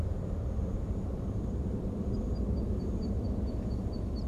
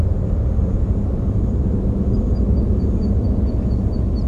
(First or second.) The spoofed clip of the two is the first